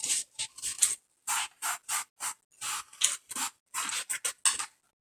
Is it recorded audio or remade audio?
recorded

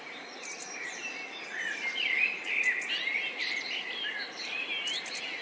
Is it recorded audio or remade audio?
recorded